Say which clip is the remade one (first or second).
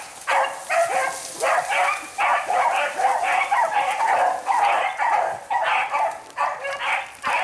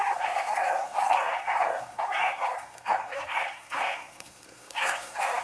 second